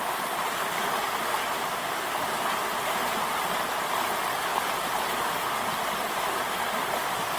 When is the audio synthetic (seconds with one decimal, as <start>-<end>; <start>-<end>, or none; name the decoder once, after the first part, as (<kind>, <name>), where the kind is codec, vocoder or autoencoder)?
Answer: none